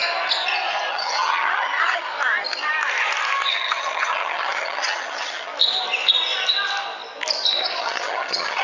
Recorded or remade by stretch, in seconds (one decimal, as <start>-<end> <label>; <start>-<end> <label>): 0.0-0.9 recorded; 0.9-2.1 remade; 2.1-3.5 recorded; 3.5-5.5 remade; 5.5-7.8 recorded; 7.8-8.6 remade